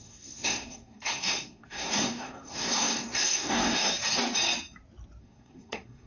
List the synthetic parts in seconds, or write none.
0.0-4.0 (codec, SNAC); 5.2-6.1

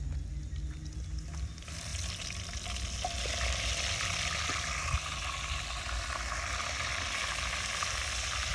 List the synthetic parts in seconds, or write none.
none

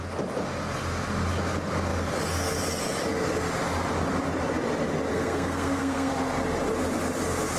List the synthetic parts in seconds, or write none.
5.1-6.1 (codec, SNAC)

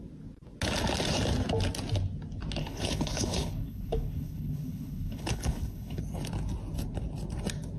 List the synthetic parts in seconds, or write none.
2.6-6.0 (codec, HILCodec)

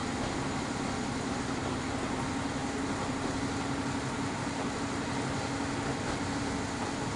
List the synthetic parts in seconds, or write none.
none

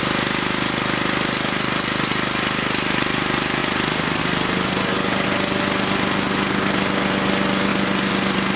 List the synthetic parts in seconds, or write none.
none

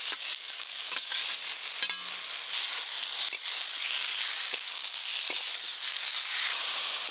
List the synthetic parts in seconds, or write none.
0.0-1.2 (codec, DAC); 3.8-5.1; 5.8-6.5

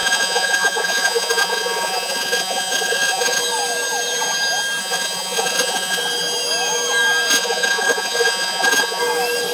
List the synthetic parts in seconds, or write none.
0.0-3.4 (vocoder, Vocos); 4.8-6.0; 7.3-9.0